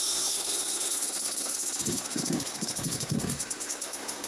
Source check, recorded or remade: remade